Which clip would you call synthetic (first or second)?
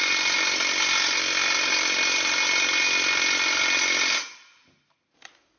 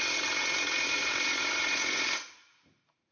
second